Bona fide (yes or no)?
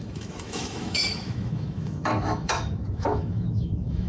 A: no